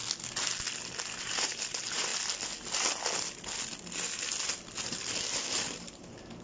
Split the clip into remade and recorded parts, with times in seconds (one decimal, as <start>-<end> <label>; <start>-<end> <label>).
0.0-1.2 recorded; 1.2-2.1 remade; 2.1-5.9 recorded; 5.9-6.4 remade